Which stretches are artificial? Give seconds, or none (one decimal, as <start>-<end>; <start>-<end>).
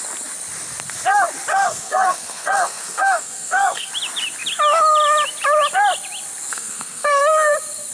1.5-3.9; 6.5-7.2